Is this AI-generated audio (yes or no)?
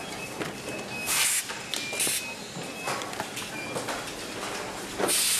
no